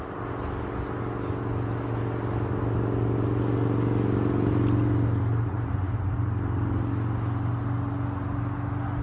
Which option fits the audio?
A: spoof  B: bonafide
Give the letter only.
B